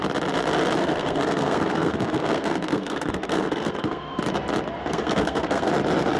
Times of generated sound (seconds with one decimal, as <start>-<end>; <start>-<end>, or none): 0.8-4.2; 4.8-5.7